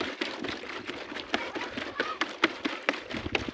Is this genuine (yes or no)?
yes